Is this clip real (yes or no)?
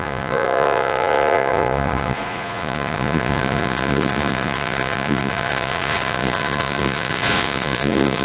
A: no